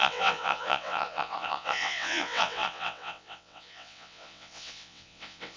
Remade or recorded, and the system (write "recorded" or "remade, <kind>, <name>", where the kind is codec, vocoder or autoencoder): remade, vocoder, WaveNeXt